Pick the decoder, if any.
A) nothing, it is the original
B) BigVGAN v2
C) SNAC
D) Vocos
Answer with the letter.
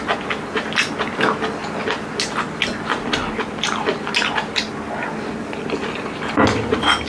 A